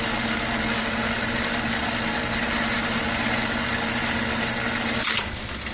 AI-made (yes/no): no